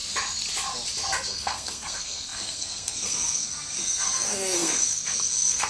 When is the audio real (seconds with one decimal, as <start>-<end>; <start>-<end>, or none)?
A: 0.0-1.3